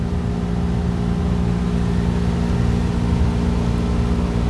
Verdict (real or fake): real